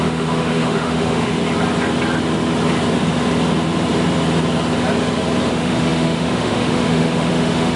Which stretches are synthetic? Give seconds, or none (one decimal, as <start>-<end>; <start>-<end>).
0.0-1.4; 5.5-7.8